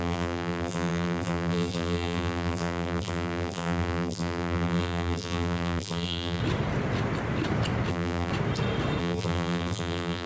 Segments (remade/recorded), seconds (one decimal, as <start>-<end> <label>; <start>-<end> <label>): 0.0-6.4 remade; 6.4-7.9 recorded; 7.9-8.3 remade; 8.3-9.0 recorded; 9.0-10.3 remade